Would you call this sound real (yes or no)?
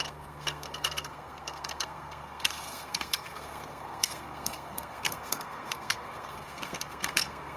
no